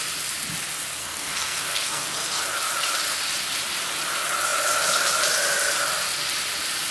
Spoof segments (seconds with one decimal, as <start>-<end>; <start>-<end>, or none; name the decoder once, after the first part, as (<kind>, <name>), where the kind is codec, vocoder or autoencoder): 1.0-2.4 (codec, SNAC)